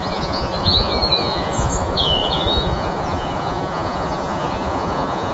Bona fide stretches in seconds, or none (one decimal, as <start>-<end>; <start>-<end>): none